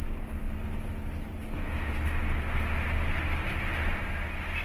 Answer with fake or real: real